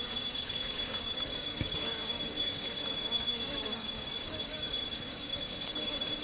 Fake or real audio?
fake